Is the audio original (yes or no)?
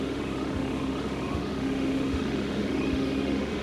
no